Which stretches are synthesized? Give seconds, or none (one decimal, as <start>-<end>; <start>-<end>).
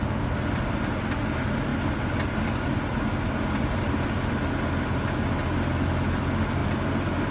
none